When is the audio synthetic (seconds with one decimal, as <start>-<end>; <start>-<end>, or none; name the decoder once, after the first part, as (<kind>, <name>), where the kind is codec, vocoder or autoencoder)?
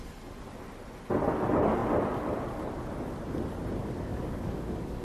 3.8-5.0 (codec, DAC)